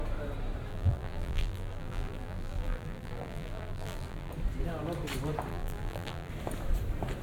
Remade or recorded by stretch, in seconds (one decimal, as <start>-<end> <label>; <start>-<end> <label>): 0.0-0.7 recorded; 0.7-4.3 remade; 4.3-5.5 recorded; 5.5-6.3 remade; 6.3-7.2 recorded